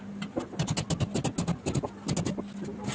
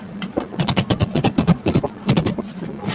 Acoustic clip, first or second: first